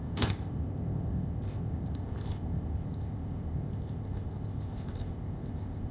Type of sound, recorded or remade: remade